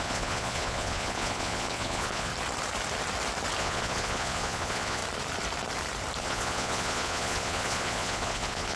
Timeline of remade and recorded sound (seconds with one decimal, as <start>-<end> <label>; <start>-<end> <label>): 0.0-2.3 remade; 2.3-3.6 recorded; 3.6-5.0 remade; 5.0-6.2 recorded; 6.2-8.8 remade